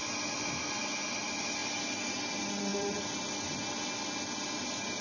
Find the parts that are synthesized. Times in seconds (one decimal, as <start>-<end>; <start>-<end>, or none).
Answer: none